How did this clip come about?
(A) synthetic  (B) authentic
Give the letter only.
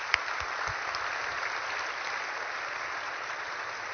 B